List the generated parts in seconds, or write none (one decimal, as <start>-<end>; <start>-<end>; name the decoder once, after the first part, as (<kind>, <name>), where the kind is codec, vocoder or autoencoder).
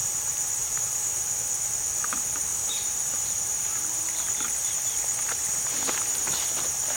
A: 0.0-0.8 (vocoder, BigVGAN v2); 2.5-7.0